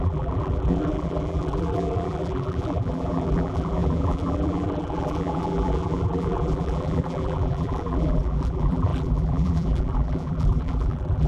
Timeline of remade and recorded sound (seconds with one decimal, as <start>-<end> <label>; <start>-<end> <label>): 0.0-11.3 remade